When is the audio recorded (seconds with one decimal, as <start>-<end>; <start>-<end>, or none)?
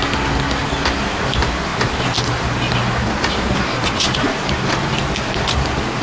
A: 0.0-6.0